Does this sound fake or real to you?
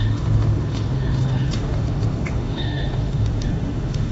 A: fake